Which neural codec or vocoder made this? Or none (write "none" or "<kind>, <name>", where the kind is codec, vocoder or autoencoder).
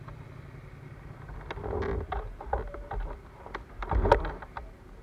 none